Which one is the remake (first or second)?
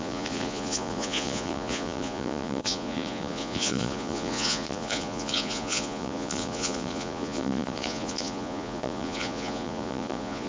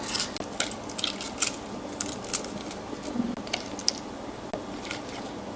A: first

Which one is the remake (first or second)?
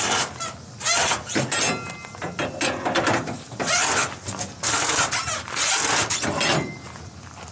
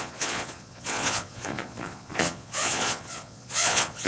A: second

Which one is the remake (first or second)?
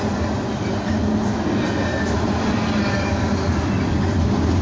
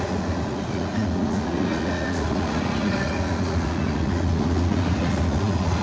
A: second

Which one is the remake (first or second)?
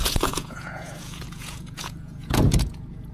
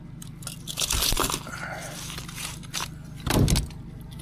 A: first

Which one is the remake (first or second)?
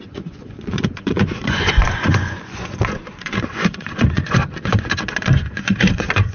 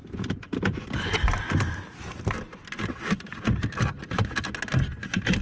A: first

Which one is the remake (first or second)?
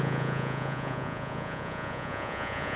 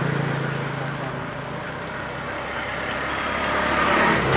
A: first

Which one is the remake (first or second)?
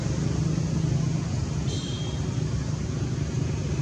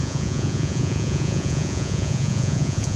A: second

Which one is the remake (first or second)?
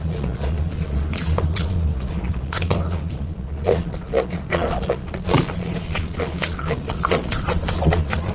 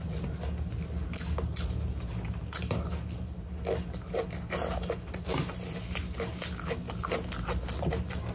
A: first